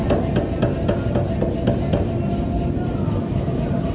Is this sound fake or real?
real